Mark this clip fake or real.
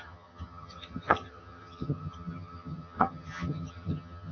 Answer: fake